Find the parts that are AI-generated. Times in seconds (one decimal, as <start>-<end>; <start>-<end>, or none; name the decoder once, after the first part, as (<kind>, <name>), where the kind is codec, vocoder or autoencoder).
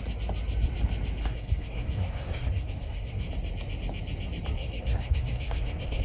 1.2-3.3 (codec, SNAC); 4.6-6.0